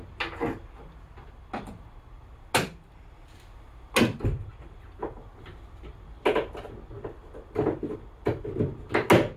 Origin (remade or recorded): recorded